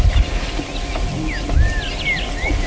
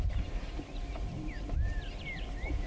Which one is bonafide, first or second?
first